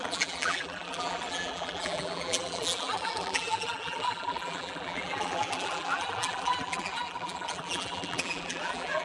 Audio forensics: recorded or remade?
remade